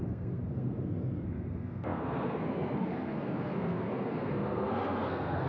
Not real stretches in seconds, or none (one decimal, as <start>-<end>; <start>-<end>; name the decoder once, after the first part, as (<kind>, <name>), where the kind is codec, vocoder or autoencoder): 0.0-5.5 (codec, SNAC)

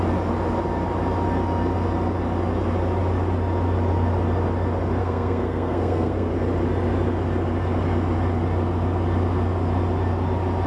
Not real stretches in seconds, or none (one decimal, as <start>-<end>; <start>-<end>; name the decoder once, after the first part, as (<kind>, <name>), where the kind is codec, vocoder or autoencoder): 5.0-6.3 (codec, SNAC)

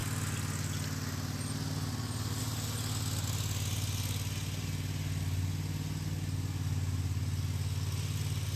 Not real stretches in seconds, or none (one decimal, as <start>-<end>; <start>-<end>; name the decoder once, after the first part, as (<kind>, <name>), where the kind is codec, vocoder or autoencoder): none

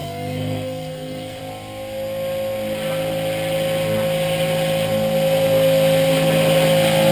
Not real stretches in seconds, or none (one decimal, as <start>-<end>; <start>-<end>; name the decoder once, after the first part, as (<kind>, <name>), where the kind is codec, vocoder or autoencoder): 0.0-1.4 (codec, SNAC)